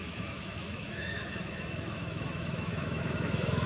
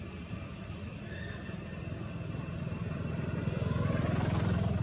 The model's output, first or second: first